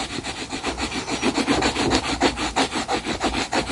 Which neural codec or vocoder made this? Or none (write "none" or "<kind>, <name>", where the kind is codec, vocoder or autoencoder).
none